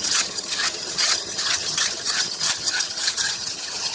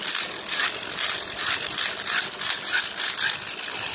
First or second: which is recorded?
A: second